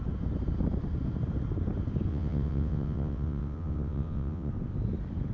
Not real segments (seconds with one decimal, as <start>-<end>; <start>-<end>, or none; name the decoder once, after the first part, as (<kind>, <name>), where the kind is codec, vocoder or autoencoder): 2.1-4.5 (vocoder, WaveNeXt)